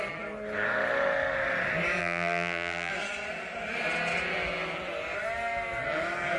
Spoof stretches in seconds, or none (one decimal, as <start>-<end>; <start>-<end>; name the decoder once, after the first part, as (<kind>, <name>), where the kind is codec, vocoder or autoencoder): 2.0-2.9 (vocoder, BigVGAN v2)